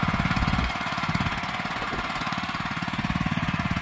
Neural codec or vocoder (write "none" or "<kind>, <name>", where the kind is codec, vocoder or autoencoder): vocoder, Vocos